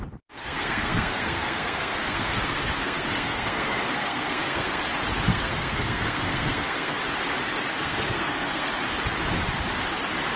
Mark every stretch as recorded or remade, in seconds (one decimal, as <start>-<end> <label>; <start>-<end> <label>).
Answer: 0.0-0.4 recorded; 0.4-4.8 remade; 4.8-5.3 recorded; 5.3-7.0 remade; 7.0-7.7 recorded; 7.7-8.7 remade; 8.7-10.4 recorded